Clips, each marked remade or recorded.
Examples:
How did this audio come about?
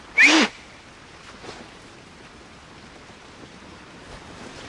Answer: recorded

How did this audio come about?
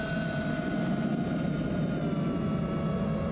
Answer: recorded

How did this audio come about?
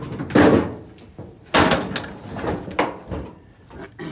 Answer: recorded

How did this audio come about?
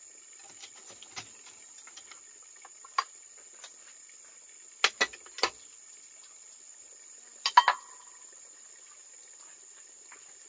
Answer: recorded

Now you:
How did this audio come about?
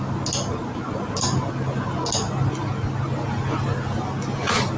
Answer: recorded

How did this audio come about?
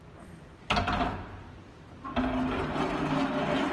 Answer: recorded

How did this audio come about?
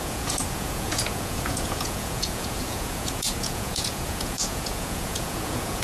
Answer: remade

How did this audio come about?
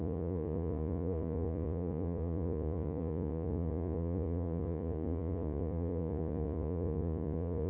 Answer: remade